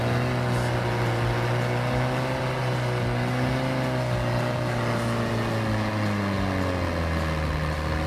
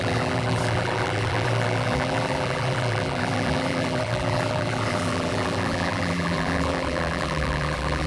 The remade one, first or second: second